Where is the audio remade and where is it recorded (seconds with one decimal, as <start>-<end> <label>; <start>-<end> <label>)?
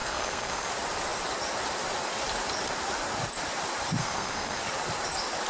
0.0-0.7 remade; 0.7-4.0 recorded; 4.0-4.6 remade; 4.6-5.5 recorded